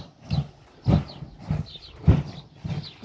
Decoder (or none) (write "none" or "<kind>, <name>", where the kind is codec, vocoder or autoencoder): none